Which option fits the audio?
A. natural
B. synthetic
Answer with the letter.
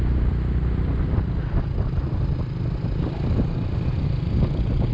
A